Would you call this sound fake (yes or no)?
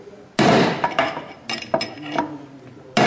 no